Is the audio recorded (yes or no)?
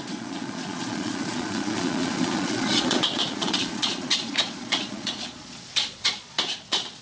no